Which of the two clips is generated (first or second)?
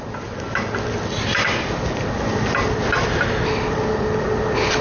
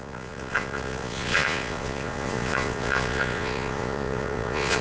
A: second